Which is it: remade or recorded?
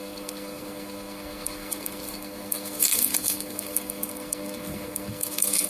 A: remade